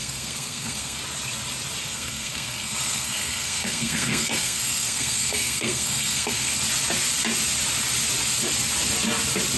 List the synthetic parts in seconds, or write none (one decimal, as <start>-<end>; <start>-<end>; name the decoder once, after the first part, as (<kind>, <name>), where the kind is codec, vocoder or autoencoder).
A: 0.0-1.0 (codec, SNAC); 1.8-6.5